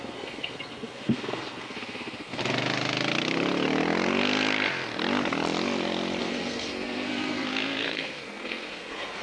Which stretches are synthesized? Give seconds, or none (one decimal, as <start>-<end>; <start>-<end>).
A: 0.0-2.4; 6.2-9.2